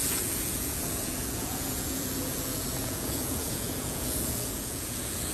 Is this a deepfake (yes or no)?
yes